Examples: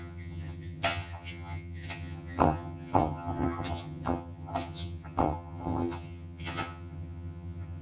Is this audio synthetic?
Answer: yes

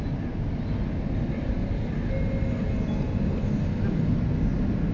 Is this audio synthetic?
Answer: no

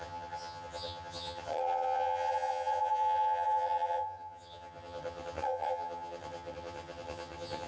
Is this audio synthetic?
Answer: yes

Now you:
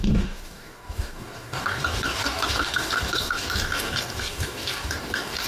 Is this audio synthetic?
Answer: yes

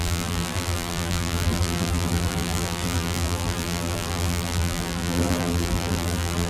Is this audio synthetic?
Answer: yes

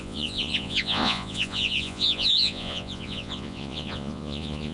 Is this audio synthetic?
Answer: yes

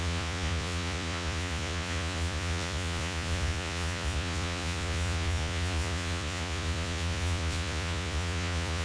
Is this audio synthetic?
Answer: yes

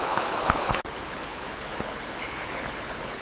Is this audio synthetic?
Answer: yes